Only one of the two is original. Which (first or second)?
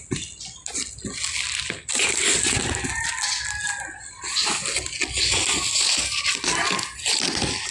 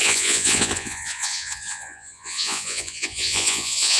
first